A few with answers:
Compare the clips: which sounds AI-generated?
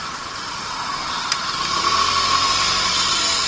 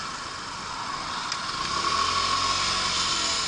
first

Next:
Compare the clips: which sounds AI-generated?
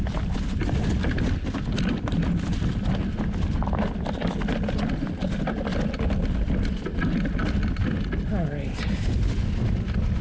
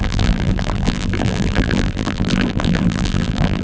second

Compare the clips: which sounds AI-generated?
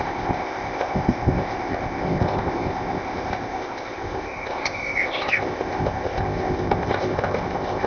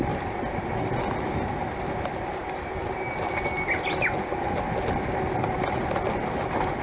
first